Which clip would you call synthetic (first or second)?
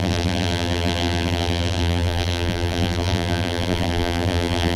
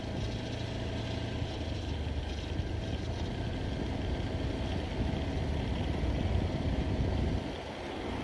first